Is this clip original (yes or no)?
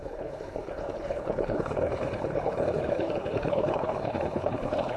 no